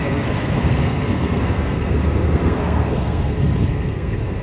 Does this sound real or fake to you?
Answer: fake